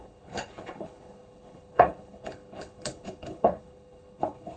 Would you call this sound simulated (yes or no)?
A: yes